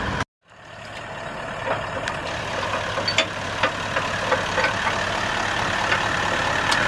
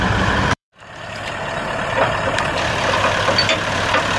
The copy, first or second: second